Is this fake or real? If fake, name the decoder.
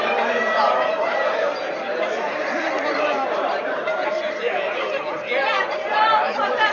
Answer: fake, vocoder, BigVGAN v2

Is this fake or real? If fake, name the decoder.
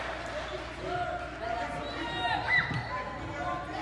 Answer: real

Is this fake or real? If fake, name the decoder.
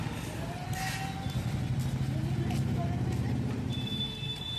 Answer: real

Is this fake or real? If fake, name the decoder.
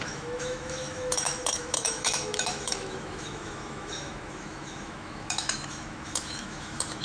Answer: fake, autoencoder, DAC-VAE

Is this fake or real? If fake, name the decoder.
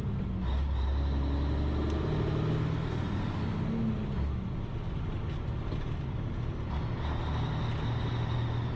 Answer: real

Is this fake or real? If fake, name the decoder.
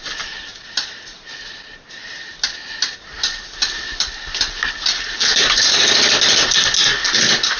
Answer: real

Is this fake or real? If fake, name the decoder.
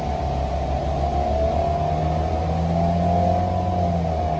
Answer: real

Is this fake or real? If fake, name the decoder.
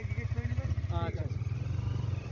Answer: real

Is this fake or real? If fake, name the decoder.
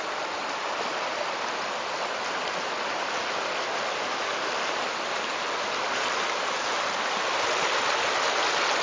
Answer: real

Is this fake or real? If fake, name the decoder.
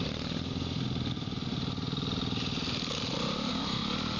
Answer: real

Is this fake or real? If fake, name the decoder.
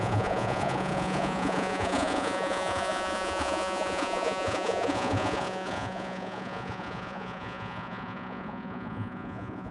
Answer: fake, vocoder, Vocos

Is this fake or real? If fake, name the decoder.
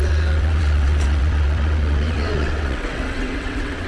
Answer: fake, vocoder, WaveNeXt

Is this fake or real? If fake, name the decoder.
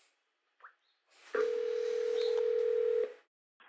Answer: real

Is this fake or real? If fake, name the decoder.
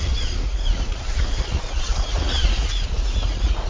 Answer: fake, vocoder, Vocos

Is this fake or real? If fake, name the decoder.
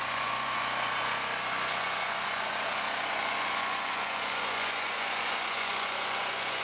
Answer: fake, vocoder, Vocos